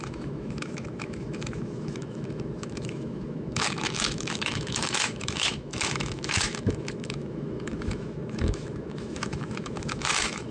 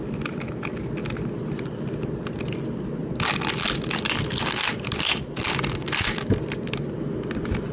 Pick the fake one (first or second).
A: first